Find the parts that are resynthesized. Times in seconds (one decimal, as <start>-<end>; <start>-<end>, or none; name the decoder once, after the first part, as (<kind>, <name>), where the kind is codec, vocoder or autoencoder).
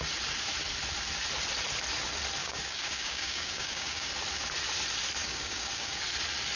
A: 2.4-4.1 (codec, DAC); 5.2-6.0